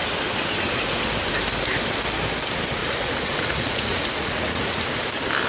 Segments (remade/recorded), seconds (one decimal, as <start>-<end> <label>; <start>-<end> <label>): 0.0-2.8 recorded; 2.8-4.8 remade; 4.8-5.5 recorded

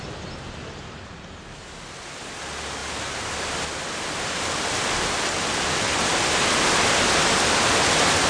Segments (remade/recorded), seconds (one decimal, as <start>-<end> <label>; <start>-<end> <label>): 0.0-8.3 recorded